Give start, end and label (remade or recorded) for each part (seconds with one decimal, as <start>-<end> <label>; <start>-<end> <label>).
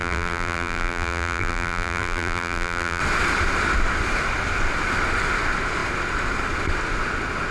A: 0.0-3.0 remade; 3.0-7.5 recorded